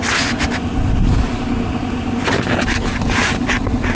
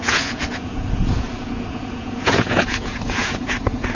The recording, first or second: first